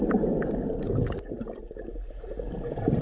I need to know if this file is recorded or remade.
recorded